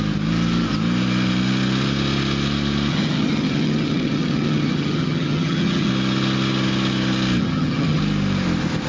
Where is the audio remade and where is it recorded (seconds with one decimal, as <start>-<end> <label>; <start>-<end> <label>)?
0.0-2.9 recorded; 2.9-5.9 remade; 5.9-7.4 recorded; 7.4-8.0 remade; 8.0-8.9 recorded